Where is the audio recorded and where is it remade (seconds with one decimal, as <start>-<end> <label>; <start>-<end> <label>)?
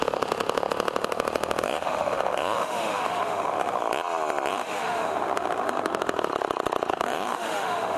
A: 0.0-3.8 remade; 3.8-4.5 recorded; 4.5-6.3 remade; 6.3-6.9 recorded; 6.9-8.0 remade